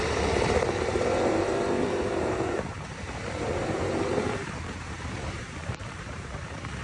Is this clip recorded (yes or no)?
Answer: no